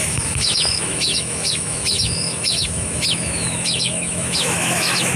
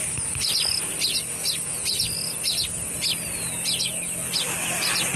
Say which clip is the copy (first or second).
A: first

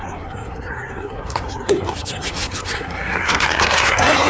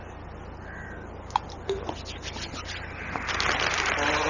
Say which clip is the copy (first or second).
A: first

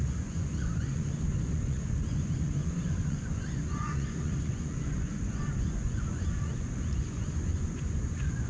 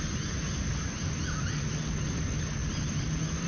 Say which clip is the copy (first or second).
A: first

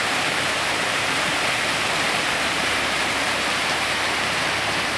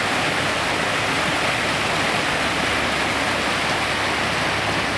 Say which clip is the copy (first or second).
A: first